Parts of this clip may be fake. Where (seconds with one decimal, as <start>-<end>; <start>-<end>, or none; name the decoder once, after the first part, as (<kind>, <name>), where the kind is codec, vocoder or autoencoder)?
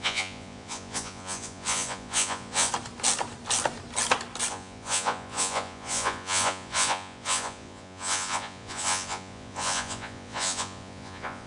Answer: 0.0-2.7 (vocoder, Vocos); 4.5-11.5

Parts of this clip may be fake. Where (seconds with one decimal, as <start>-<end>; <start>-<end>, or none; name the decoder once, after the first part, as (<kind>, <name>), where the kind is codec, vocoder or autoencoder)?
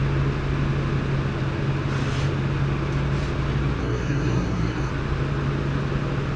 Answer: 3.8-4.9 (codec, SNAC)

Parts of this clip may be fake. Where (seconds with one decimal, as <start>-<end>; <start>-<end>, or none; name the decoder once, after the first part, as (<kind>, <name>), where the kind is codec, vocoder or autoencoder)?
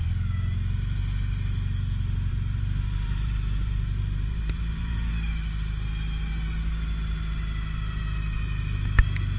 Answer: 2.3-5.1 (vocoder, BigVGAN v2)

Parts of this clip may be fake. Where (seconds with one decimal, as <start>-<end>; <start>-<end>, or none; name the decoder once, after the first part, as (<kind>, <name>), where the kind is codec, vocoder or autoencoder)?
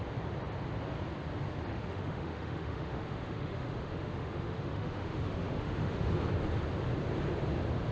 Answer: 1.7-6.1 (autoencoder, DAC-VAE)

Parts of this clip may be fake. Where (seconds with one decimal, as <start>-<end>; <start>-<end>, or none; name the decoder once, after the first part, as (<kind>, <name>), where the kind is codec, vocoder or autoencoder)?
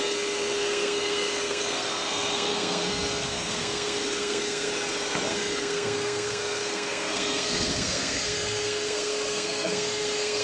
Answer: 0.0-4.7 (codec, SNAC); 5.3-10.4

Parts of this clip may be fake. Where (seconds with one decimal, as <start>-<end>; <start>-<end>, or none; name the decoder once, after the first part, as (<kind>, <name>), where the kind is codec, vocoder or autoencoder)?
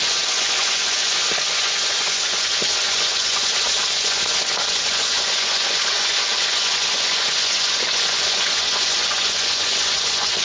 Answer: 0.0-10.4 (vocoder, Vocos)